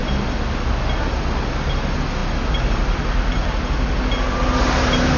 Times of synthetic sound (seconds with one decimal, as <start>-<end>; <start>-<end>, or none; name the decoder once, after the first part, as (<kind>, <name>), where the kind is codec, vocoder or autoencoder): none